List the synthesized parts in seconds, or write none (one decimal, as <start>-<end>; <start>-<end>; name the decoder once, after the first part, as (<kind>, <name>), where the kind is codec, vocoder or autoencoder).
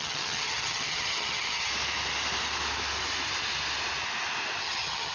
0.0-1.7 (vocoder, HiFi-GAN); 4.6-5.1